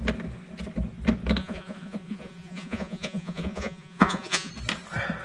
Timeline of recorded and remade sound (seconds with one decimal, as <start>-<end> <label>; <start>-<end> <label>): 0.0-1.4 recorded; 1.4-4.5 remade; 4.5-5.2 recorded

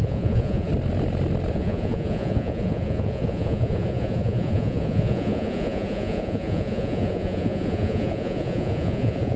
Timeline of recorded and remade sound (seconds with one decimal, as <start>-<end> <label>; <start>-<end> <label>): 0.0-0.7 remade; 0.7-1.5 recorded; 1.5-9.4 remade

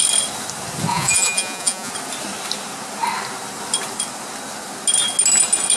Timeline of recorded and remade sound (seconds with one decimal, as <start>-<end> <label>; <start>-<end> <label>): 0.0-0.9 recorded; 0.9-1.9 remade; 1.9-5.8 recorded

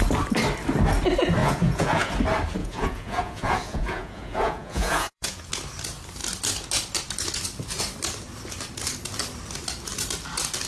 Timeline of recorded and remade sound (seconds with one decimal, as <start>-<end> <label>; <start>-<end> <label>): 0.0-1.4 recorded; 1.4-2.1 remade; 2.1-2.6 recorded; 2.6-5.5 remade; 5.5-10.7 recorded

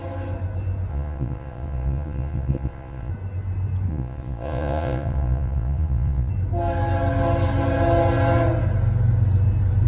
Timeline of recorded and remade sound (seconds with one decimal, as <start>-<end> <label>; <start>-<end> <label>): 0.0-0.9 recorded; 0.9-3.1 remade; 3.1-3.9 recorded; 3.9-6.3 remade; 6.3-9.9 recorded

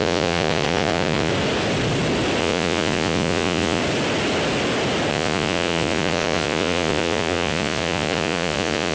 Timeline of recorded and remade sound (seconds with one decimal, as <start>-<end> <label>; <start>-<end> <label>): 0.0-1.3 remade; 1.3-2.4 recorded; 2.4-3.8 remade; 3.8-5.1 recorded; 5.1-8.9 remade

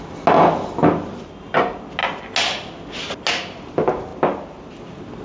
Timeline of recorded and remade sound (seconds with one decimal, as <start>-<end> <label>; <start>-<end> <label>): 0.0-5.2 recorded